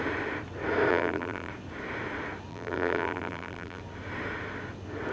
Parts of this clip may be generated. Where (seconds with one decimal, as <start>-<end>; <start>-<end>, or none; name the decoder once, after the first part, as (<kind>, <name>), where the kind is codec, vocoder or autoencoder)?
0.9-1.5 (vocoder, BigVGAN v2); 2.5-3.8